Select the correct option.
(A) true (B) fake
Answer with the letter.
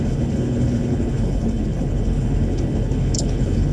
B